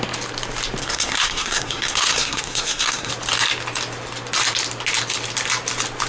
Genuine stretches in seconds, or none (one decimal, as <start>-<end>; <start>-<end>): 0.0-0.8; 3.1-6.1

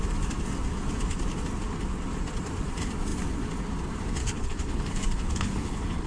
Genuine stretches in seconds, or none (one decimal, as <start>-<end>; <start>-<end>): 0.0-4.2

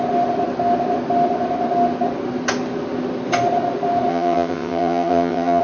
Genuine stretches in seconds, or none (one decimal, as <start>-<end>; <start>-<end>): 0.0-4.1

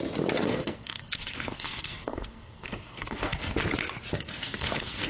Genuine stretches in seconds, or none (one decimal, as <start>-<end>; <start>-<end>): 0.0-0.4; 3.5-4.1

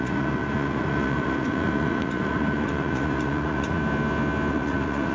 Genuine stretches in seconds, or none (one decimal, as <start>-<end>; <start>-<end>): 3.8-4.5

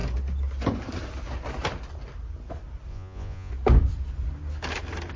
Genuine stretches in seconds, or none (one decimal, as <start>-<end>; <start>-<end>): 0.0-2.9; 3.5-5.2

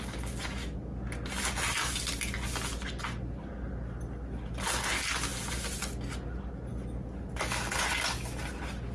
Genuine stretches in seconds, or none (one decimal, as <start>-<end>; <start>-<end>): 0.0-8.9